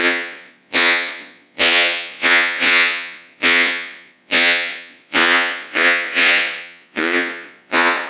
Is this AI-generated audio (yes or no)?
yes